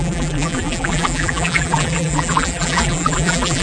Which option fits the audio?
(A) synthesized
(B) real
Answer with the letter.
A